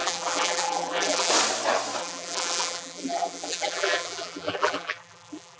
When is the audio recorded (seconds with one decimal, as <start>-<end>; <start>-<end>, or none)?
1.3-2.0